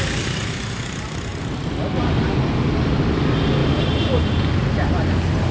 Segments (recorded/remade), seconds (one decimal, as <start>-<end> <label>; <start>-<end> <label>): 0.0-3.6 recorded; 3.6-4.2 remade; 4.2-5.5 recorded